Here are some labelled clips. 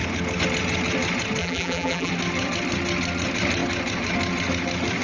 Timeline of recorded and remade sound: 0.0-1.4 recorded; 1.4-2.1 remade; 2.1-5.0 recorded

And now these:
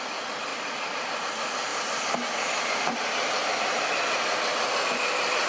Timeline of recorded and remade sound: 0.0-0.5 recorded; 0.5-1.1 remade; 1.1-5.5 recorded

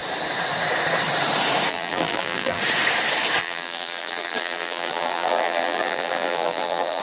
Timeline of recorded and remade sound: 0.0-1.7 recorded; 1.7-2.6 remade; 2.6-3.4 recorded; 3.4-7.0 remade

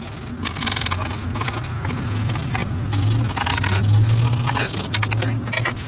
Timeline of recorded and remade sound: 0.0-5.9 recorded

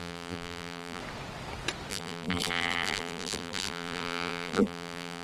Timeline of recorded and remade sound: 0.0-1.0 remade; 1.0-1.9 recorded; 1.9-5.2 remade